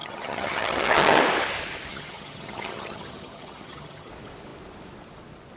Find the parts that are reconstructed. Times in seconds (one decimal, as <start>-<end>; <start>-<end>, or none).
0.0-1.2; 1.9-4.1